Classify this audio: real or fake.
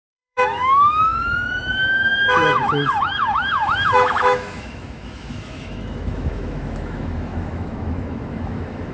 fake